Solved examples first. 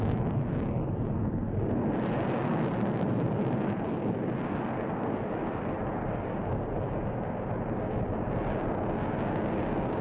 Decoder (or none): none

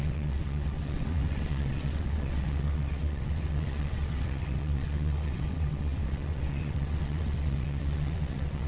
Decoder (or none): vocoder, WaveNeXt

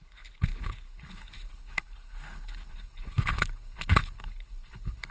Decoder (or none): codec, HILCodec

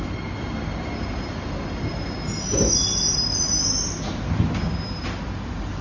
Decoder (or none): none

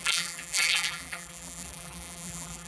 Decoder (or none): vocoder, BigVGAN v2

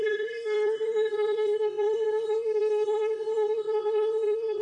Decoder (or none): codec, SNAC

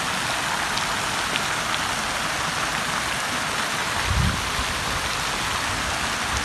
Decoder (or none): none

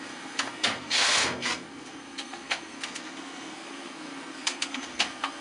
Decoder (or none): codec, SNAC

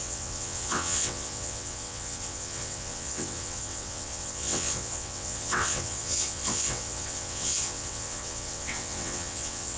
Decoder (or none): vocoder, WaveNeXt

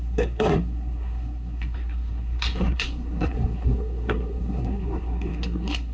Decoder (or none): codec, SNAC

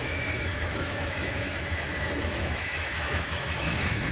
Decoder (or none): autoencoder, DAC-VAE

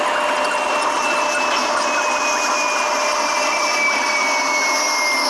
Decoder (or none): none